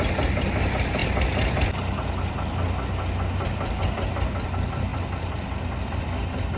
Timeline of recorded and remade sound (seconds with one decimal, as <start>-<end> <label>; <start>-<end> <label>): 0.0-6.6 recorded